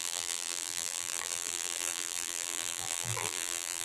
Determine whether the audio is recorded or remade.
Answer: remade